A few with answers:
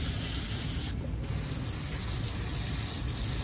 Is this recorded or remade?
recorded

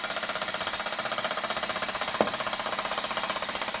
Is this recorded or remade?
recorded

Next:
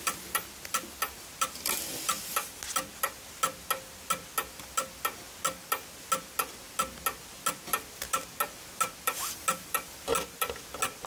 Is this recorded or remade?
recorded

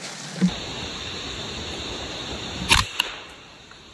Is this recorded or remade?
recorded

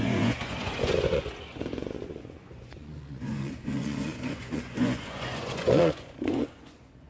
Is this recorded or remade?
remade